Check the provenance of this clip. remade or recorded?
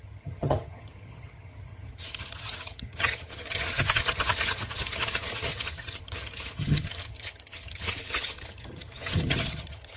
remade